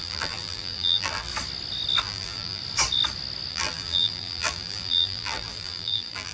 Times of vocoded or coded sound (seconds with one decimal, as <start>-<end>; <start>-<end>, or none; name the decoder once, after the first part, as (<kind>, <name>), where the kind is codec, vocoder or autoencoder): 0.0-1.3 (vocoder, BigVGAN v2); 2.0-2.6; 3.5-6.3